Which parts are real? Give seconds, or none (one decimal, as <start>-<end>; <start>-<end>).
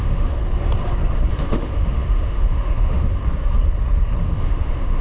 0.4-1.3; 3.2-4.2